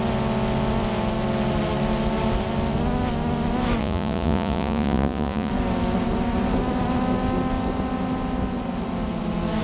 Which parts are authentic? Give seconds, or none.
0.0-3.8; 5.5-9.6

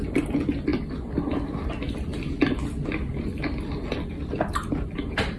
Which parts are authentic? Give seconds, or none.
0.0-5.4

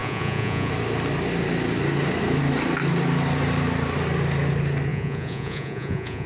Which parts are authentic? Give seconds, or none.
0.7-4.9